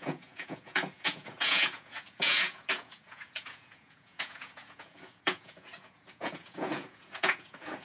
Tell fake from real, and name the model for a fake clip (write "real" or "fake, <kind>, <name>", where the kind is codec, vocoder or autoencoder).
fake, vocoder, Vocos